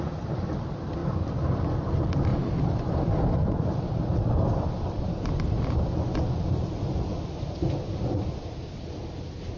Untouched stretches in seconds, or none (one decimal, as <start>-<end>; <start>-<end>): 0.0-1.0; 1.7-2.3; 5.6-9.6